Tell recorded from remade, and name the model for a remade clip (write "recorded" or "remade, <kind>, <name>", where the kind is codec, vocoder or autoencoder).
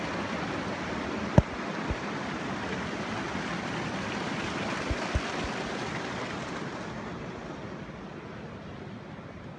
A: recorded